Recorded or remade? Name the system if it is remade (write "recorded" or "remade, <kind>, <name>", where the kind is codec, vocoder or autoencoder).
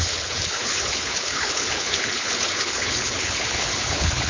remade, codec, HILCodec